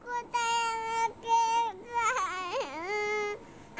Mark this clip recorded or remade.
recorded